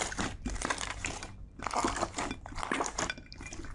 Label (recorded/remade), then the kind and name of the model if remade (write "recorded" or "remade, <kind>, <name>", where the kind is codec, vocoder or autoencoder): recorded